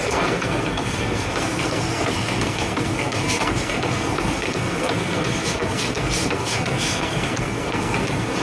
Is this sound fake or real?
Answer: fake